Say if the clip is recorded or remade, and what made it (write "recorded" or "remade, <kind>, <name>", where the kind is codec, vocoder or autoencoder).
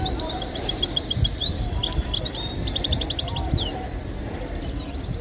remade, vocoder, BigVGAN v2